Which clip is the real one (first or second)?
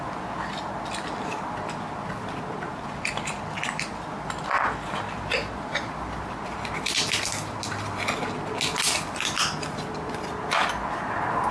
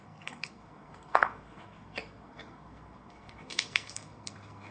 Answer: first